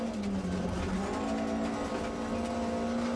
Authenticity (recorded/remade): recorded